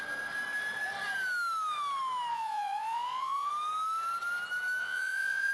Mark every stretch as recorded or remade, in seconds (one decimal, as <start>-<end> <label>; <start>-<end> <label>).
0.0-2.3 recorded; 2.3-3.5 remade; 3.5-4.8 recorded; 4.8-5.5 remade